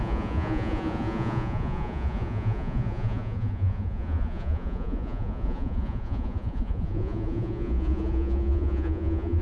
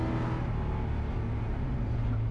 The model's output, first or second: first